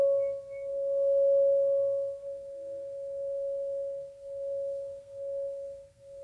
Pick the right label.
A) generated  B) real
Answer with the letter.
A